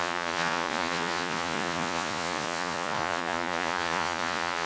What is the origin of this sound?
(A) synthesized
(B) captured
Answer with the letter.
A